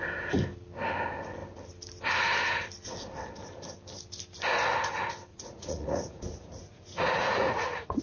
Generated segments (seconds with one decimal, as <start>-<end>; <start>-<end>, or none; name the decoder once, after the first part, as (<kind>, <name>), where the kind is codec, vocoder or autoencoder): 5.3-8.0 (vocoder, Vocos)